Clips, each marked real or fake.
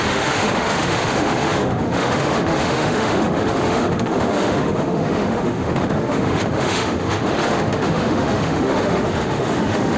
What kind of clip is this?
fake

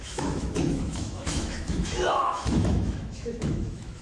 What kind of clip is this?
fake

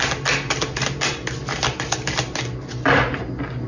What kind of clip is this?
real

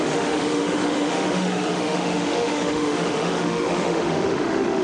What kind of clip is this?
fake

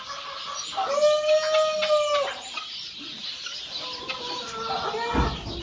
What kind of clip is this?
real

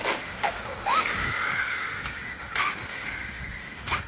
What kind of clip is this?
fake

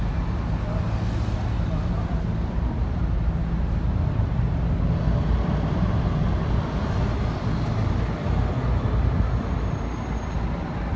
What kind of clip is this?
real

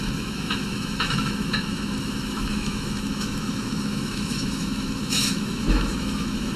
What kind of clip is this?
fake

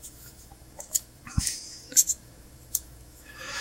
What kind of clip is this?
fake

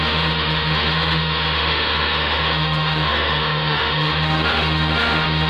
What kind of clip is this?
fake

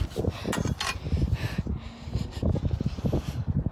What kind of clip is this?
real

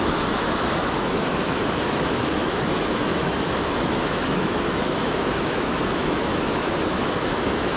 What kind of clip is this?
fake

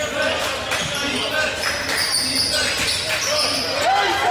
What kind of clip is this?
real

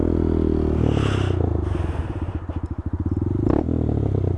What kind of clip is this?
real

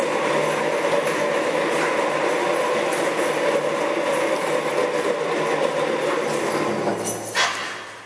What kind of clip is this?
real